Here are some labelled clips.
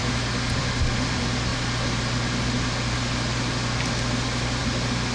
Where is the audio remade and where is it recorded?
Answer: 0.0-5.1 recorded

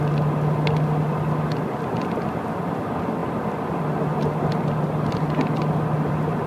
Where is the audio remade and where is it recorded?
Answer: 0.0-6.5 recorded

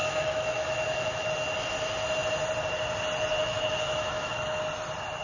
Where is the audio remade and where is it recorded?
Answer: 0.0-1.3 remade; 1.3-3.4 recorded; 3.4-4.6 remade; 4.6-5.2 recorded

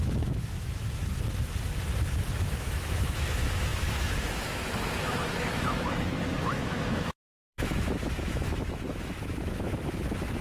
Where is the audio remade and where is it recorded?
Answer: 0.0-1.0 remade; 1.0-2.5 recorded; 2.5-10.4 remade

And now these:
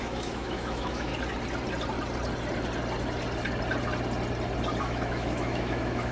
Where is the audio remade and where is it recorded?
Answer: 0.0-1.1 remade; 1.1-4.8 recorded; 4.8-6.1 remade